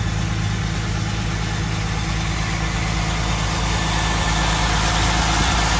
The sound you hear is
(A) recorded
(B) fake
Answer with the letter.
A